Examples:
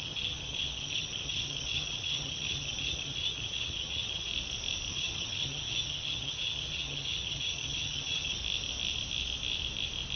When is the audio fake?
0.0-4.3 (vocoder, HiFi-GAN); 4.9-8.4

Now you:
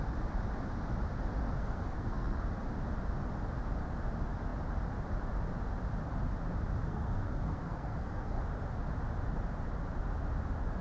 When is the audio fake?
1.4-2.5 (codec, SNAC); 6.8-8.4

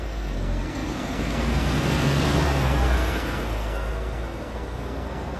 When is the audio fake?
0.0-5.4 (codec, SNAC)

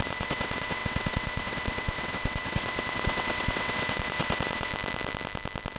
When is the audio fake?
0.0-4.7 (vocoder, WaveNeXt)

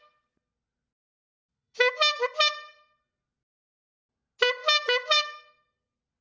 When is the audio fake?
1.1-2.2 (autoencoder, DAC-VAE); 4.6-5.4

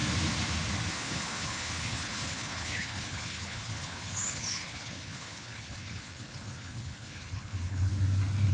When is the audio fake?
0.9-7.9 (codec, HILCodec)

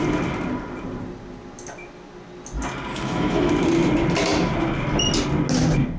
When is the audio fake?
2.9-3.5 (autoencoder, DAC-VAE)